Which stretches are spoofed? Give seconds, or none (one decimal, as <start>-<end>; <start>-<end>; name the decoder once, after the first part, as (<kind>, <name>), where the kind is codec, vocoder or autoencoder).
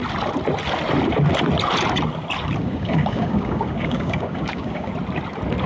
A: 2.6-4.9 (codec, DAC)